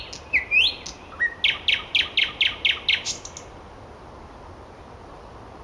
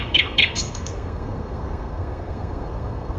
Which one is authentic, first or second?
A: first